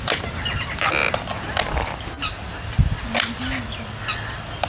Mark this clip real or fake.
real